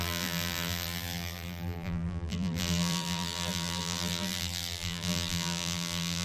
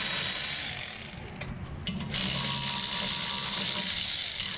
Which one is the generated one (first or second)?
first